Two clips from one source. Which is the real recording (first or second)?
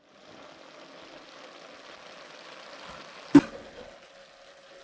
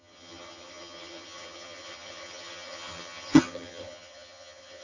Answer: first